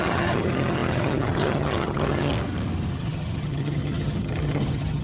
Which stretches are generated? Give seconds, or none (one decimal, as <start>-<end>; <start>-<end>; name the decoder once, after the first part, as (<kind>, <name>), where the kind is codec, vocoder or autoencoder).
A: 0.0-2.3 (vocoder, HiFi-GAN); 2.9-5.0